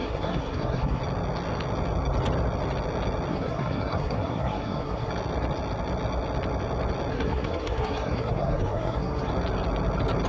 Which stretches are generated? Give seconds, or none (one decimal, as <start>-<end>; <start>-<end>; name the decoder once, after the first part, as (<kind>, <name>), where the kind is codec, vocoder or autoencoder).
0.0-1.0 (codec, SNAC); 3.3-5.1; 7.1-9.3